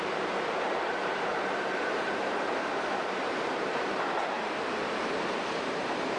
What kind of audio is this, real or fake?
fake